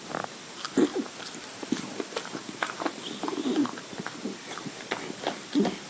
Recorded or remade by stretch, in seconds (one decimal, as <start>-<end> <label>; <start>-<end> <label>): 0.0-0.9 recorded; 0.9-2.2 remade; 2.2-3.6 recorded; 3.6-4.5 remade; 4.5-5.9 recorded